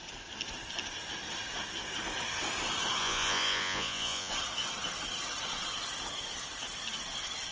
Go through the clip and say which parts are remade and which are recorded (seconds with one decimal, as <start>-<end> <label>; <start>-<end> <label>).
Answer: 0.0-3.0 recorded; 3.0-4.3 remade; 4.3-7.5 recorded